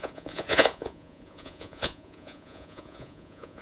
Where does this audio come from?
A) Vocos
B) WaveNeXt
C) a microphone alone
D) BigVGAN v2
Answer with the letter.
A